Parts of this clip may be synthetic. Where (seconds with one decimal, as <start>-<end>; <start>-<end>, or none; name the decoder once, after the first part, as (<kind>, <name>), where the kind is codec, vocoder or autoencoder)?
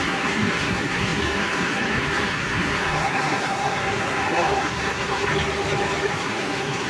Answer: 0.0-5.3 (codec, SNAC); 6.1-6.9